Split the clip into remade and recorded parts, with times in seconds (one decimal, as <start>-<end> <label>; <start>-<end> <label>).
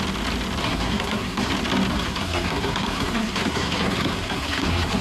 0.0-0.6 recorded; 0.6-1.5 remade; 1.5-1.9 recorded; 1.9-5.0 remade